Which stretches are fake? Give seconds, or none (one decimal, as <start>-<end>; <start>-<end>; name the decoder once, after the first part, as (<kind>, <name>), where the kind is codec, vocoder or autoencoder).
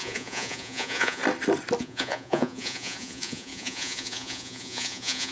0.0-1.2 (vocoder, Vocos); 1.8-5.3